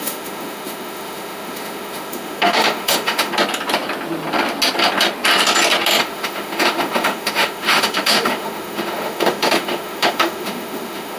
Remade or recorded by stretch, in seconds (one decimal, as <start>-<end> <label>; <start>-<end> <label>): 0.0-3.3 remade; 3.3-6.0 recorded; 6.0-11.2 remade